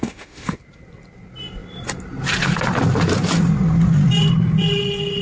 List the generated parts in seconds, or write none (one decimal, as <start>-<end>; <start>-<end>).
0.0-0.6